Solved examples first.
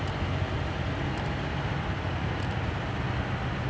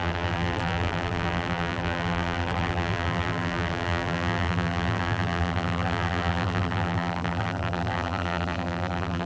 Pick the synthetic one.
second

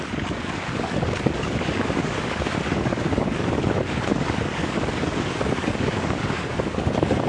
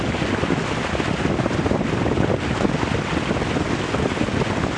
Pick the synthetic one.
first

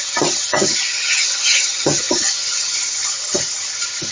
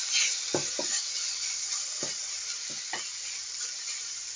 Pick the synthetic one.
first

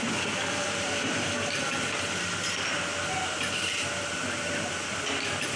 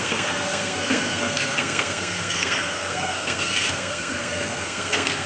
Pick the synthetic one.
second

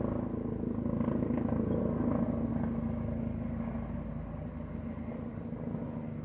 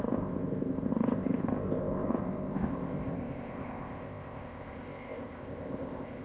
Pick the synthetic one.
second